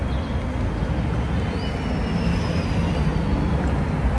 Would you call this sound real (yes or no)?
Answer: yes